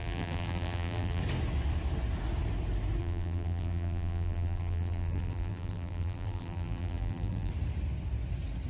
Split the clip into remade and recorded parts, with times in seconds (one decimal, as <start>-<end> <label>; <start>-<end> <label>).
0.0-1.2 remade; 1.2-3.0 recorded; 3.0-7.5 remade; 7.5-8.7 recorded